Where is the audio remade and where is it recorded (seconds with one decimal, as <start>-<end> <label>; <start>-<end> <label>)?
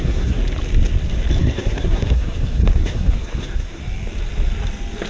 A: 0.0-0.4 remade; 0.4-1.4 recorded; 1.4-3.8 remade; 3.8-5.1 recorded